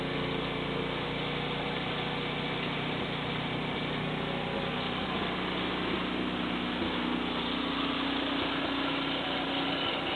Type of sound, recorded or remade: recorded